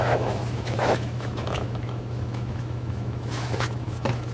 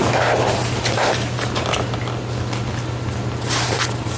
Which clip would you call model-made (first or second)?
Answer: first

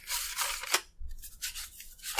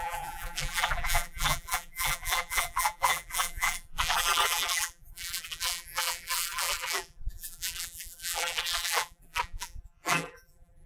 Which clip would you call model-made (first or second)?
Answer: second